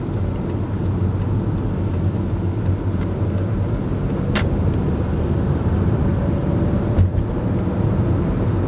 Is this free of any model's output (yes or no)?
yes